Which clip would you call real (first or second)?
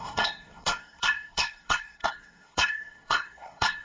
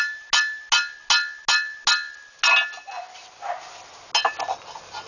second